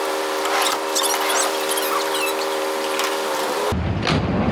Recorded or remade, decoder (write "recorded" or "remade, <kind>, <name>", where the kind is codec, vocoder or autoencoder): recorded